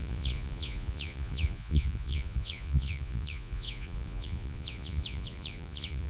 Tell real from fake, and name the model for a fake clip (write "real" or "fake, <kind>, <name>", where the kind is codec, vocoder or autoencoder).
fake, vocoder, Vocos